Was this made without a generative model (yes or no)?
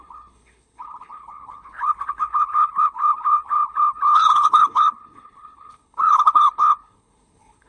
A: no